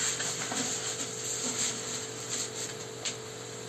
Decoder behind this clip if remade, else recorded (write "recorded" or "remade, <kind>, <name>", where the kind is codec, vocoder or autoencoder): remade, vocoder, BigVGAN v2